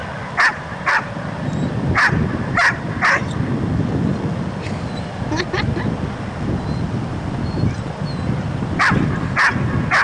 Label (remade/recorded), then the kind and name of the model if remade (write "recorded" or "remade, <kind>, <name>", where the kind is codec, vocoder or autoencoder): remade, vocoder, BigVGAN v2